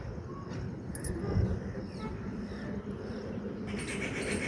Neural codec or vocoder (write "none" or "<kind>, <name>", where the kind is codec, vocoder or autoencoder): none